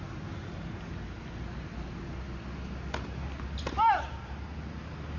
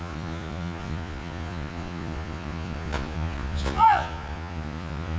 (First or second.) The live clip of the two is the first